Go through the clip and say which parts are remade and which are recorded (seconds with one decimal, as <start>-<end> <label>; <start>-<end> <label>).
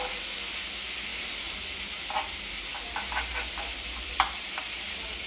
0.0-1.1 recorded; 1.1-1.6 remade; 1.6-2.7 recorded; 2.7-4.6 remade; 4.6-5.3 recorded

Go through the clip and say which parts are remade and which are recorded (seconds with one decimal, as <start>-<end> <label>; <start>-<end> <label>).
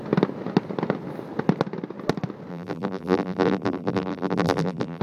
0.0-2.5 recorded; 2.5-5.0 remade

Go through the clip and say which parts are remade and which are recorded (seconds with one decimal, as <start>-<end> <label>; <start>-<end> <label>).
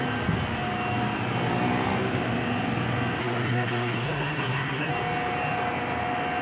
0.0-3.2 recorded; 3.2-4.9 remade; 4.9-6.4 recorded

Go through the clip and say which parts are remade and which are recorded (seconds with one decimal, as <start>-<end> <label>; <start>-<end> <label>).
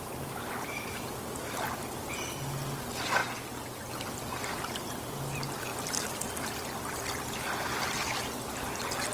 0.0-9.1 recorded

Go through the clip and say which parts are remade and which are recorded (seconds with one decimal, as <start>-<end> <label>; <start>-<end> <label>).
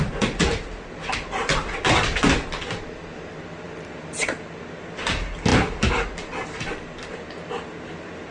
0.0-8.3 recorded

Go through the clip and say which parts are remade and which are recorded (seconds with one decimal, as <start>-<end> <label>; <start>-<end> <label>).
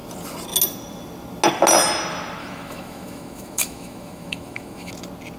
0.0-2.4 recorded; 2.4-4.9 remade; 4.9-5.4 recorded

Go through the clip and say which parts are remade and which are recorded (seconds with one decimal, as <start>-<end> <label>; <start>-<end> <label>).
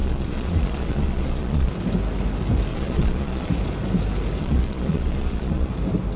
0.0-1.7 remade; 1.7-2.7 recorded; 2.7-3.5 remade; 3.5-4.4 recorded; 4.4-5.7 remade; 5.7-6.2 recorded